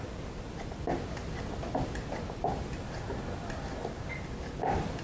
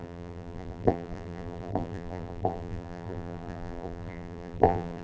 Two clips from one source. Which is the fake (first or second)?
second